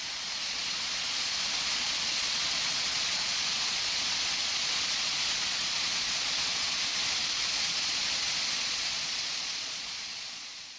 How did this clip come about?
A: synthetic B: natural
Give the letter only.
A